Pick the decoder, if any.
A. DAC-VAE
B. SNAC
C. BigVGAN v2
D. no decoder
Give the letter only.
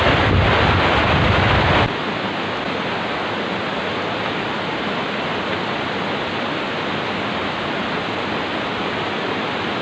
D